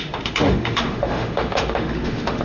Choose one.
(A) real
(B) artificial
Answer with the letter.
B